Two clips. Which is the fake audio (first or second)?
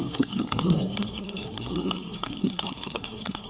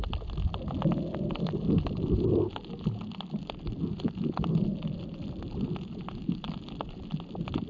first